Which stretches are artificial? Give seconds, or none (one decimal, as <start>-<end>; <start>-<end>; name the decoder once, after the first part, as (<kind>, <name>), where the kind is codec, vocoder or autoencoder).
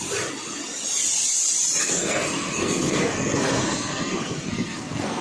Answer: 1.8-5.2 (codec, SNAC)